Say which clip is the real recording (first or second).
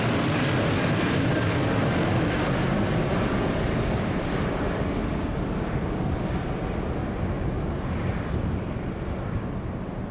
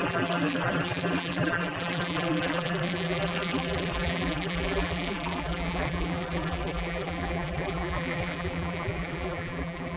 first